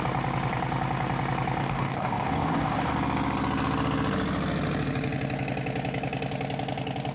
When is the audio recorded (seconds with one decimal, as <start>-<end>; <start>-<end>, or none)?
0.0-1.6; 2.9-7.1